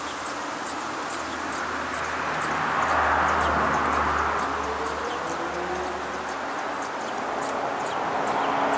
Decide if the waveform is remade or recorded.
recorded